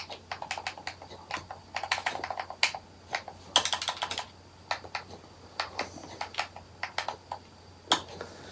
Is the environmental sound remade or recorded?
recorded